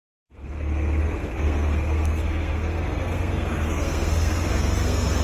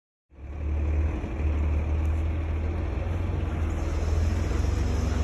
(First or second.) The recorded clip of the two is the second